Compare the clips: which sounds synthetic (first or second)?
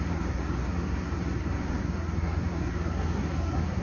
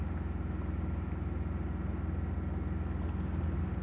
first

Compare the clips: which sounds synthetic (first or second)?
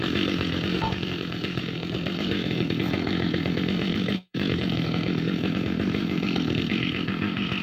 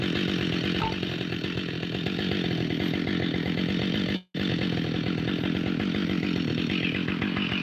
first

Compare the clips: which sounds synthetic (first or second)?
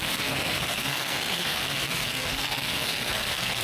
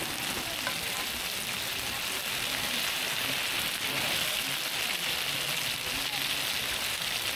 first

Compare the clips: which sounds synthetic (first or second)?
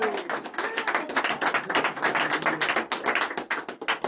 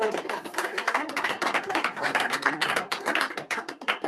second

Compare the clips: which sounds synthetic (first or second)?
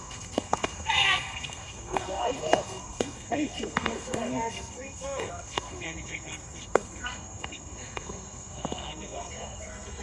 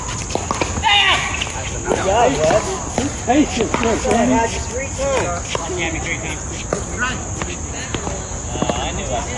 first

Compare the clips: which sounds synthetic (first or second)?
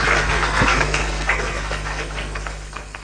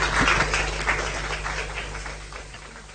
first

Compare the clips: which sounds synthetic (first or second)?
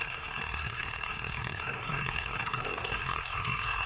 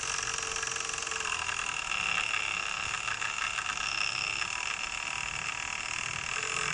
first